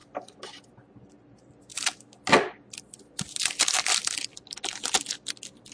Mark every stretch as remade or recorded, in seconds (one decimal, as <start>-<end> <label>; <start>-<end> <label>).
0.0-5.7 recorded